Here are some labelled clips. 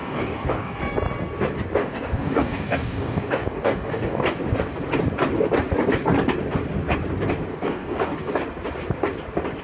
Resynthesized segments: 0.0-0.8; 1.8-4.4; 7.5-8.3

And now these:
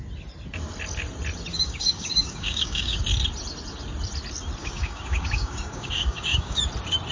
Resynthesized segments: 1.5-3.0; 4.6-6.6

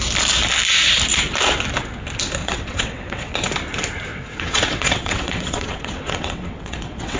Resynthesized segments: 2.4-3.3; 4.1-7.2

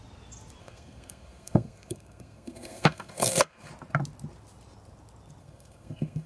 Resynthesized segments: 0.6-3.7; 5.4-6.3

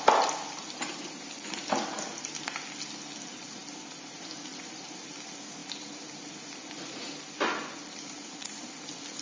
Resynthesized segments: none

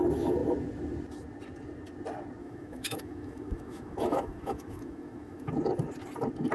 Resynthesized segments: 2.4-5.5

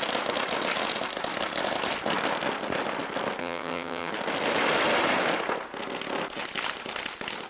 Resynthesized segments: 3.4-4.1